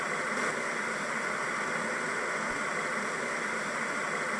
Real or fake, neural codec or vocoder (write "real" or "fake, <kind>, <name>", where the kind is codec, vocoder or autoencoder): real